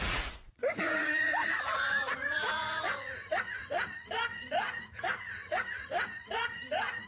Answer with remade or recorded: remade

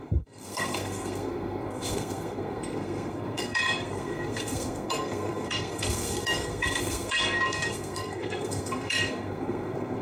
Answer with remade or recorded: remade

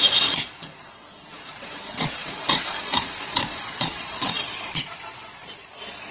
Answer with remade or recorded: remade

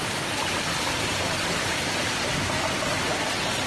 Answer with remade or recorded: recorded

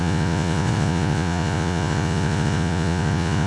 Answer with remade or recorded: remade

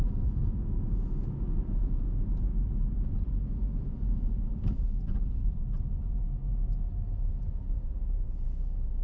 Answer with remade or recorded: remade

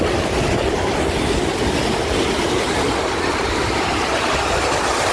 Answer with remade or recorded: recorded